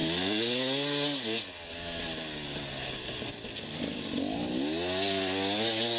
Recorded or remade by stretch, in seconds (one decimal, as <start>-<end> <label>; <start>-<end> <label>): 0.0-6.0 recorded